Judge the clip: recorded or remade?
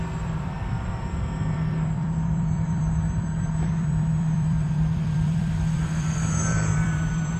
remade